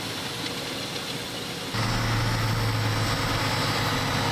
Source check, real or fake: real